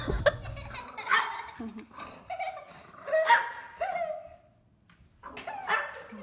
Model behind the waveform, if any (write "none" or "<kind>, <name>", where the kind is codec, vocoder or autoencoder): none